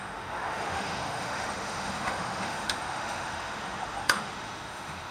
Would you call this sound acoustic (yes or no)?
no